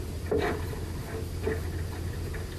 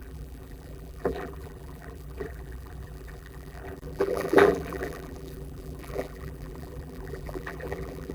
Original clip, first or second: first